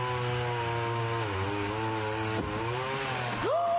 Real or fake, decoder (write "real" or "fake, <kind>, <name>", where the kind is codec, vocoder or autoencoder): real